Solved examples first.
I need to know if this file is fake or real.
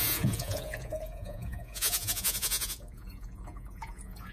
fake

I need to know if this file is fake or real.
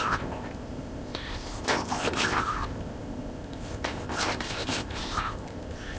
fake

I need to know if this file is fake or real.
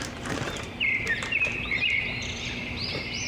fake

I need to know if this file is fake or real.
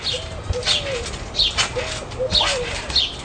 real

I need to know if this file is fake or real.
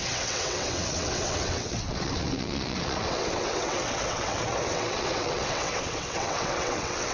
fake